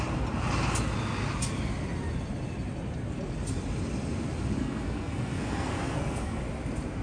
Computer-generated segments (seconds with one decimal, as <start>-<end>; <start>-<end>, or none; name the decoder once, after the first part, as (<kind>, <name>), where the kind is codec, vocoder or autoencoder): 4.6-6.4 (codec, SNAC)